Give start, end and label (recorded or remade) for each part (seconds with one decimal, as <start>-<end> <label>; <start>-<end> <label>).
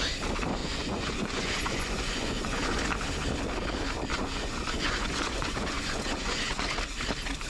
0.0-0.6 recorded; 0.6-2.8 remade; 2.8-4.1 recorded; 4.1-6.6 remade; 6.6-7.5 recorded